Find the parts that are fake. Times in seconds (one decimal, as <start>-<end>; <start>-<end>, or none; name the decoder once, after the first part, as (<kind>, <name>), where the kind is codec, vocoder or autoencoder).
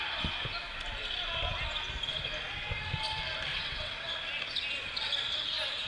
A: 3.5-4.1 (vocoder, WaveNeXt)